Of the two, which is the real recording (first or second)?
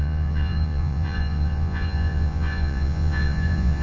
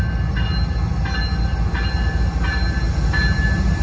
second